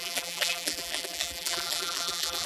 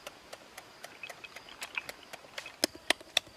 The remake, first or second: first